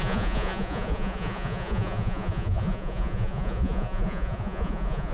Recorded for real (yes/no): no